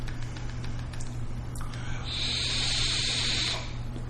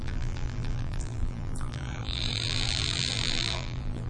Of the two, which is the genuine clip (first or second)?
first